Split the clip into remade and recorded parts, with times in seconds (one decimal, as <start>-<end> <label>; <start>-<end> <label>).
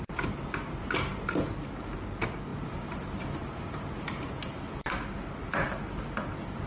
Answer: 0.0-6.7 recorded